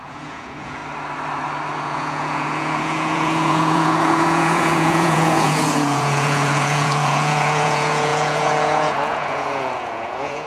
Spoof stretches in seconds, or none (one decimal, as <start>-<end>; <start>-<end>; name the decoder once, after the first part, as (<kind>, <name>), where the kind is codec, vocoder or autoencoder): 0.0-0.8 (vocoder, Vocos); 1.8-10.5